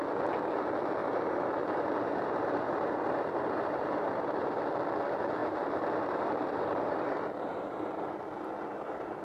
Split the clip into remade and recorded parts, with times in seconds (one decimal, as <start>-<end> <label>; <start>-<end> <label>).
0.0-1.0 recorded; 1.0-4.6 remade; 4.6-5.4 recorded; 5.4-9.2 remade